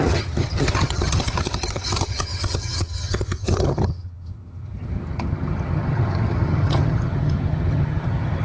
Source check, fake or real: fake